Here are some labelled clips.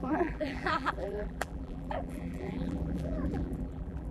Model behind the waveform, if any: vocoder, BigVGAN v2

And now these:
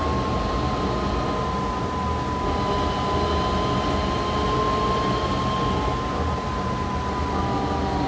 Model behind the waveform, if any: none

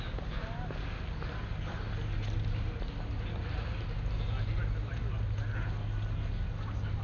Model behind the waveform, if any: none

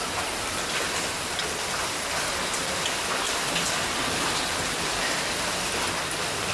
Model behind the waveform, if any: none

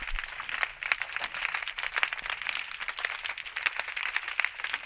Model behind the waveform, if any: none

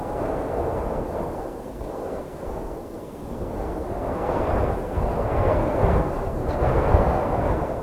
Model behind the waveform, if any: codec, SNAC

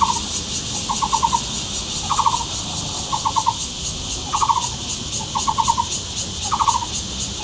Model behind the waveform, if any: none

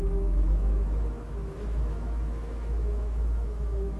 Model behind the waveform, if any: autoencoder, DAC-VAE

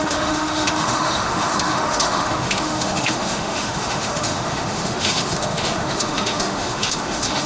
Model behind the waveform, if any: autoencoder, DAC-VAE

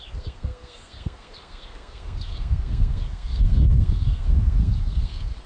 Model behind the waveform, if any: codec, SNAC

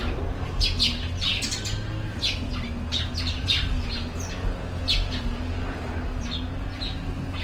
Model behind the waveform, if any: none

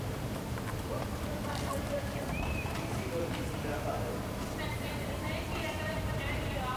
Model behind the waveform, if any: vocoder, BigVGAN v2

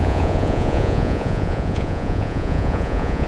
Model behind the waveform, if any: vocoder, Vocos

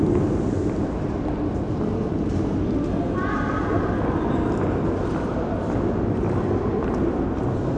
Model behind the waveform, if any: none